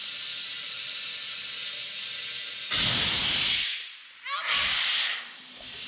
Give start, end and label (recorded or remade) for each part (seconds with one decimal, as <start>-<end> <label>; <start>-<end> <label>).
0.0-5.9 recorded